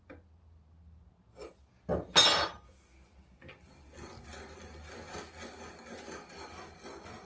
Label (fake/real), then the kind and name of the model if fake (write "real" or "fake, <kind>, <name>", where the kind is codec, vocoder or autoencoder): real